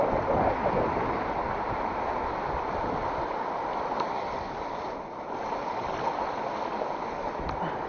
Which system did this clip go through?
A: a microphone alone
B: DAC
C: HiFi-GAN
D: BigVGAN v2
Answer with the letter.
A